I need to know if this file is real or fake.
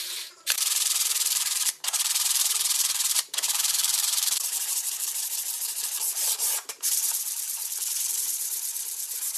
fake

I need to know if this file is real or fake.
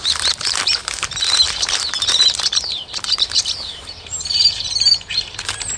fake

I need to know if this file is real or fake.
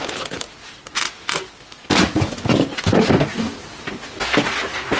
real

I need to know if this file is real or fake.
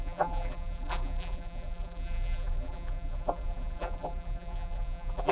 fake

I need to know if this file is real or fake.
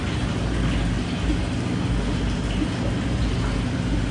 real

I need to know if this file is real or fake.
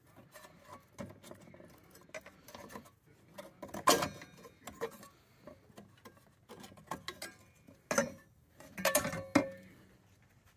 real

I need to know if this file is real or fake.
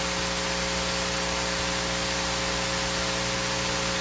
real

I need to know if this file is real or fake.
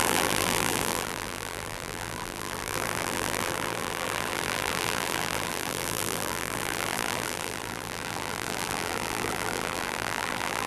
fake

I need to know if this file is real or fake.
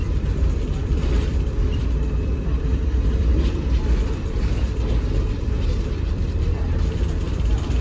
fake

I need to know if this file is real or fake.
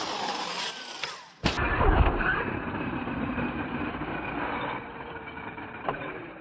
fake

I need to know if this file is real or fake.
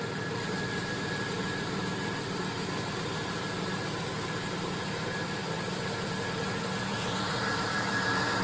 fake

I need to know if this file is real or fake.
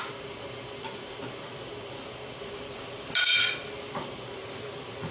fake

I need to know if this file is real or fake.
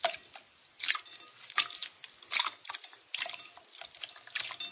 real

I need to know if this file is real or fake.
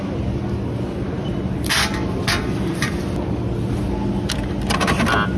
real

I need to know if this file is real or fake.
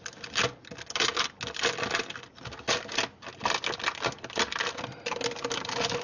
real